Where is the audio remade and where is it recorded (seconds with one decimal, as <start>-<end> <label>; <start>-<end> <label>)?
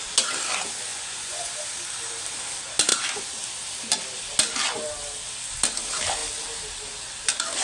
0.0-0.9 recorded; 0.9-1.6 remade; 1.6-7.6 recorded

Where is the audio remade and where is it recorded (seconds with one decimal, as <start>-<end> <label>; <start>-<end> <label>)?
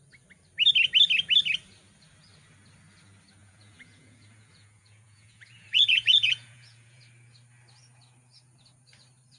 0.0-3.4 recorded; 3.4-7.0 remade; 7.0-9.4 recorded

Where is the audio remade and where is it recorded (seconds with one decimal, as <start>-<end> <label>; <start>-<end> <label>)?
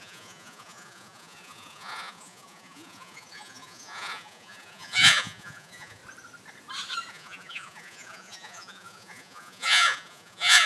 0.0-6.0 remade; 6.0-7.1 recorded; 7.1-10.7 remade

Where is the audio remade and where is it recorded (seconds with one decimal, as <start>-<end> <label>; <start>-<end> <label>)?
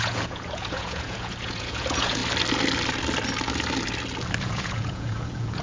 0.0-2.2 remade; 2.2-4.4 recorded; 4.4-5.6 remade